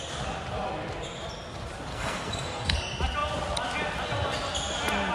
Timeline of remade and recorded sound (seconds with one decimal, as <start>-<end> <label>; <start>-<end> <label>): 0.0-1.9 recorded; 1.9-2.8 remade; 2.8-5.1 recorded